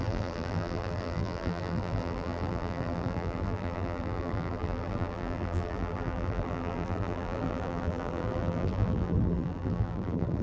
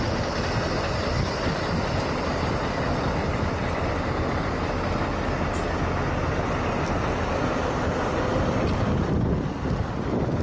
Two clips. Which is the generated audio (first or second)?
first